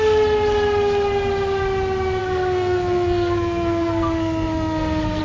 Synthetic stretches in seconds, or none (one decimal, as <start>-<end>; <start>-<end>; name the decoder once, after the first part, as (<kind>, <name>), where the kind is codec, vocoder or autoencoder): 2.2-5.2 (codec, SNAC)